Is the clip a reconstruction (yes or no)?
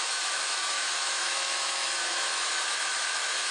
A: yes